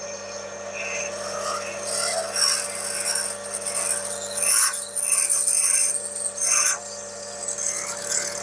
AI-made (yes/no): no